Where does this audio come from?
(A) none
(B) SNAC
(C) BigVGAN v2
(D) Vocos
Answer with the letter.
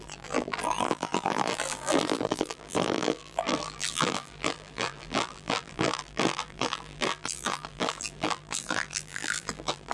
C